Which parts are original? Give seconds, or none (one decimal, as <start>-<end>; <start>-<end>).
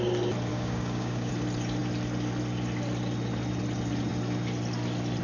0.0-0.5; 1.3-5.2